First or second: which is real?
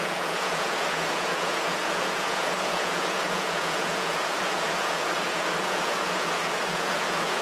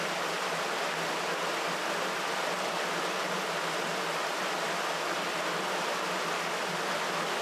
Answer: second